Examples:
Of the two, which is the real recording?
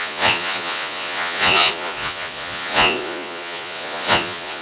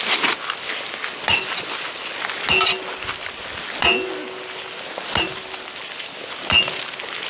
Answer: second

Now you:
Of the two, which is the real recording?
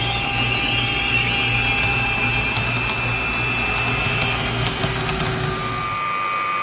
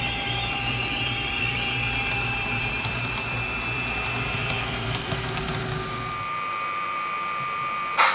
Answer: first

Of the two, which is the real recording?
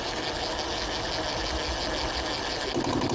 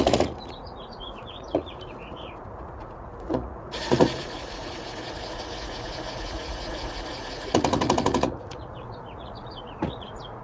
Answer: first